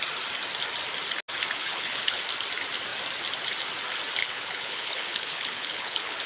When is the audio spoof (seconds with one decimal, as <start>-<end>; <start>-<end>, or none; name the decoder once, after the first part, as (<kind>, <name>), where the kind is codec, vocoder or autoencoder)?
1.6-2.2 (codec, HILCodec); 4.2-6.3